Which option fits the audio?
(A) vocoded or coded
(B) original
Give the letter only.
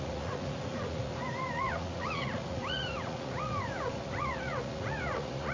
A